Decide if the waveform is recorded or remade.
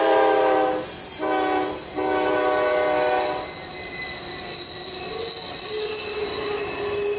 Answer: recorded